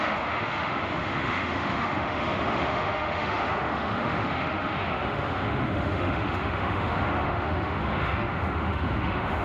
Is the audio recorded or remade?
remade